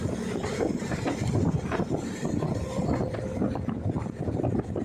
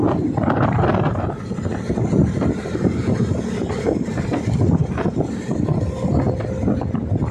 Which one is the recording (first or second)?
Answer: second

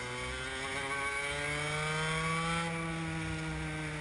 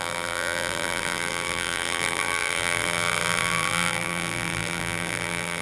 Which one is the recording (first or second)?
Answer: first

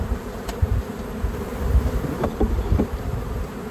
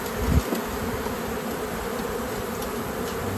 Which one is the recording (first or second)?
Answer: second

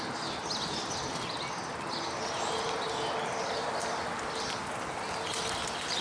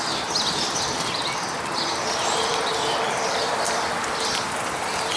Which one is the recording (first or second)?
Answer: first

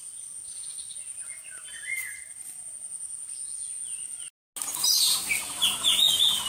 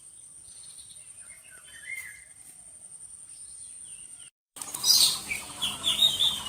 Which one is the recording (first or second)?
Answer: first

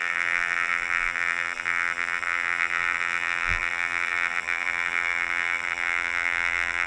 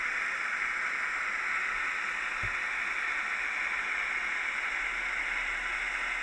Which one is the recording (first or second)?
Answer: second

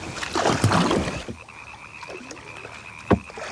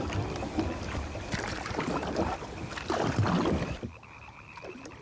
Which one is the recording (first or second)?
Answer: first